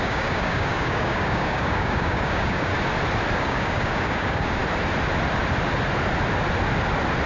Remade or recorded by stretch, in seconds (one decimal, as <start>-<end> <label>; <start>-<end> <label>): 0.0-2.7 remade; 2.7-3.4 recorded; 3.4-4.6 remade; 4.6-7.3 recorded